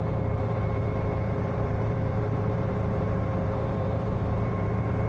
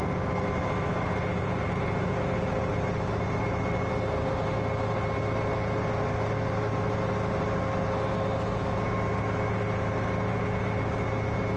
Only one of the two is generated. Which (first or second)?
first